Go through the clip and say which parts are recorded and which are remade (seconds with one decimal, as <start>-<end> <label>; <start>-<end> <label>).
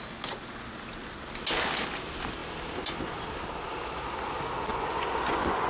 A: 0.0-4.7 recorded; 4.7-5.7 remade